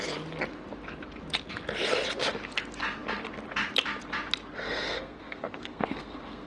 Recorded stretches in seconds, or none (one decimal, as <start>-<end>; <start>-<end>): 0.0-4.6